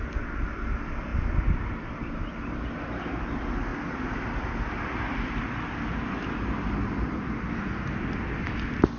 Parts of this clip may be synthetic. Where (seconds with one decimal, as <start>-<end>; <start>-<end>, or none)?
none